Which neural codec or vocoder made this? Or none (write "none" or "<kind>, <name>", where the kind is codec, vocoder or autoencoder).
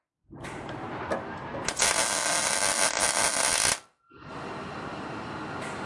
none